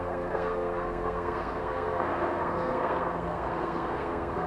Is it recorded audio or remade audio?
remade